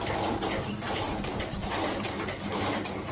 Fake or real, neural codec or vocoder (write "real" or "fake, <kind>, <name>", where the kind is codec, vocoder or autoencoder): real